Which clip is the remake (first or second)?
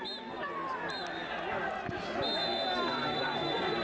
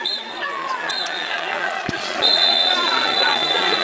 second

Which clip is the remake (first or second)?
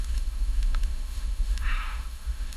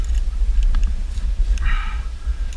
first